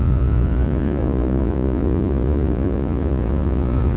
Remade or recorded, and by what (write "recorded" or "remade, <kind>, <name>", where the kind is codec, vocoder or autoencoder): remade, vocoder, Vocos